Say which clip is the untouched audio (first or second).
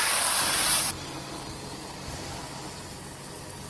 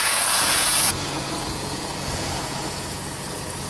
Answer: first